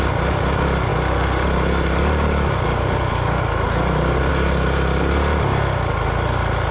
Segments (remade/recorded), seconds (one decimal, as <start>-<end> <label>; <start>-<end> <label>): 0.0-6.7 recorded